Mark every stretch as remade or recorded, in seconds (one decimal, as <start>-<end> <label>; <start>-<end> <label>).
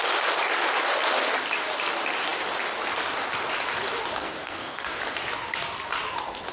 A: 0.0-4.2 recorded; 4.2-5.0 remade; 5.0-6.5 recorded